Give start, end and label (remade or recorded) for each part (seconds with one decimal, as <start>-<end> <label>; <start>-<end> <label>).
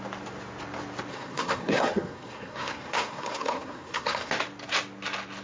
0.0-1.1 recorded; 1.1-4.3 remade; 4.3-5.4 recorded